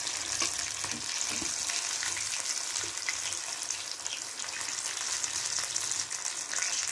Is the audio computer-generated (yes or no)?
no